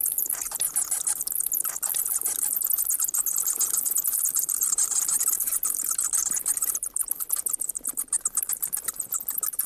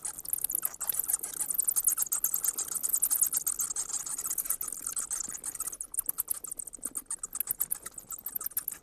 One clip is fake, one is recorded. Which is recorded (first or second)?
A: second